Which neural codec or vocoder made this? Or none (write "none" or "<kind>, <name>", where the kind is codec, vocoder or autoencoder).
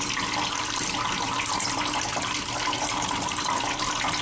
none